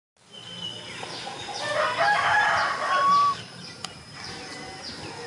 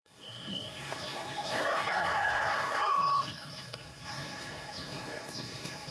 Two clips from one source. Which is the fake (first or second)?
second